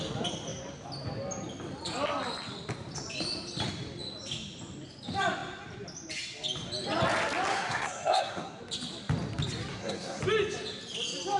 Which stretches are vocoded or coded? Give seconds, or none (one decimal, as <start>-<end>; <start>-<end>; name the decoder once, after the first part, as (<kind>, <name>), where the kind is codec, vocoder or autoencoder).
7.5-8.6 (codec, SNAC); 9.7-10.2